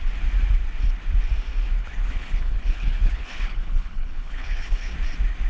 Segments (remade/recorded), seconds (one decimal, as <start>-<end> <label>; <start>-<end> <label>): 0.0-1.8 recorded; 1.8-4.9 remade; 4.9-5.5 recorded